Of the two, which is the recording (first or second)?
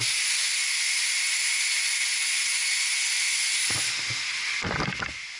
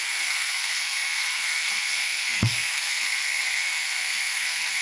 first